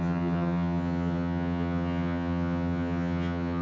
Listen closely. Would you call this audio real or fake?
fake